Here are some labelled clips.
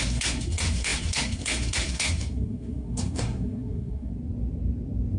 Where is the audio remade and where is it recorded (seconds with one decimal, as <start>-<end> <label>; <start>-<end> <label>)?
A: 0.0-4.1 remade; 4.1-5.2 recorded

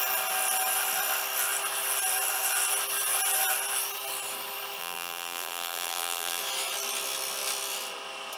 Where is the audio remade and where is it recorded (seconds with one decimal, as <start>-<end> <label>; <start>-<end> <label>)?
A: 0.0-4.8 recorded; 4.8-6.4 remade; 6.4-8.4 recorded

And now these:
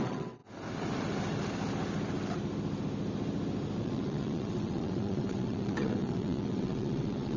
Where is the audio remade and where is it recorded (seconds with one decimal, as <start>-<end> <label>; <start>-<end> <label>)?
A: 0.0-0.4 remade; 0.4-3.8 recorded; 3.8-7.4 remade